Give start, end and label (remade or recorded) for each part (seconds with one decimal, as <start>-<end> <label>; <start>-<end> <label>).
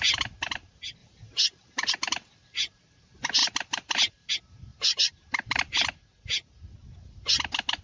0.0-1.0 recorded; 1.0-1.9 remade; 1.9-3.4 recorded; 3.4-4.3 remade; 4.3-4.7 recorded; 4.7-5.6 remade; 5.6-7.8 recorded